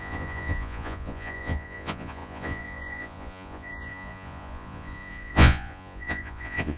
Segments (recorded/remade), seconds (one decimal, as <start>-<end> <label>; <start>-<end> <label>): 0.0-6.8 remade